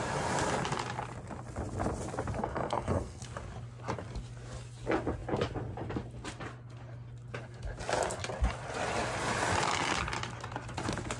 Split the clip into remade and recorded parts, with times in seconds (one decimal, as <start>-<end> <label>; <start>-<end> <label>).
0.0-2.4 recorded; 2.4-3.2 remade; 3.2-11.2 recorded